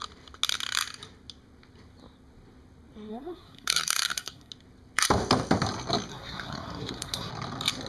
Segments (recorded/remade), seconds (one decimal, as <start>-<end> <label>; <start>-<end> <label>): 0.0-3.1 recorded; 3.1-4.5 remade; 4.5-6.1 recorded; 6.1-7.3 remade; 7.3-7.9 recorded